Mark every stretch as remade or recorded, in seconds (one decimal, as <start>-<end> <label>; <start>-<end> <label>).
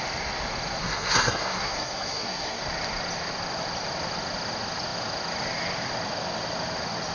0.0-0.8 recorded; 0.8-2.6 remade; 2.6-7.1 recorded